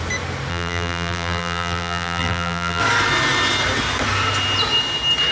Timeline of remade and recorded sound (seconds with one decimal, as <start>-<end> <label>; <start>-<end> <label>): 0.0-0.5 recorded; 0.5-2.8 remade; 2.8-5.3 recorded